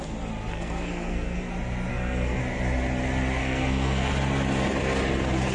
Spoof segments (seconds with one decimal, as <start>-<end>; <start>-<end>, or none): 0.5-1.5; 1.9-2.4; 3.4-4.1